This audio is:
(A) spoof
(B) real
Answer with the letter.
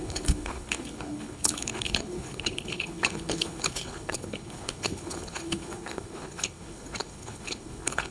A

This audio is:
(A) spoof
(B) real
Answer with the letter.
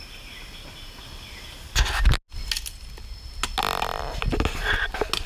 B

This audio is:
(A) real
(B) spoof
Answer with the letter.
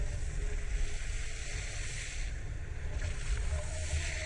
A